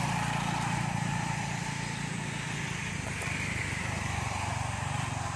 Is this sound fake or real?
real